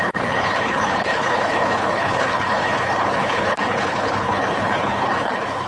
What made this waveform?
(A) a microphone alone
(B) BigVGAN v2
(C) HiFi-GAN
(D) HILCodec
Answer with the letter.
D